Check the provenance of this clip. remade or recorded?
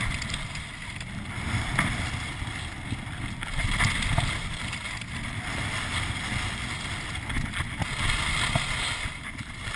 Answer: recorded